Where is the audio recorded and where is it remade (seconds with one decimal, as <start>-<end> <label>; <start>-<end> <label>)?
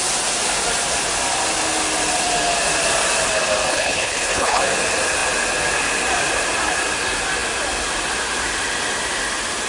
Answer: 0.0-3.7 recorded; 3.7-4.6 remade; 4.6-9.7 recorded